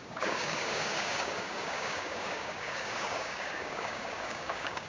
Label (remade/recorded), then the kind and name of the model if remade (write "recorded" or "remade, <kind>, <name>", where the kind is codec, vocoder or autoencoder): remade, codec, DAC